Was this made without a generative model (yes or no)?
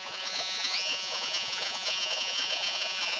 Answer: no